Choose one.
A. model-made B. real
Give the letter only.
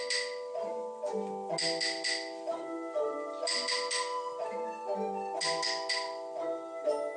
B